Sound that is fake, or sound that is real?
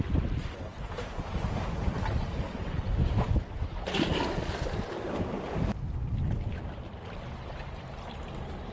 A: real